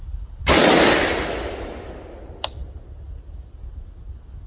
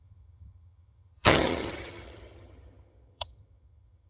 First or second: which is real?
first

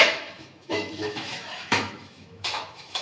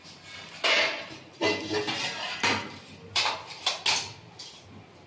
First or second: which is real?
second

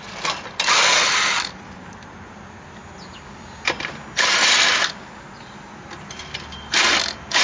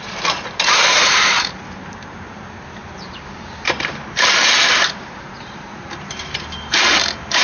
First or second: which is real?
first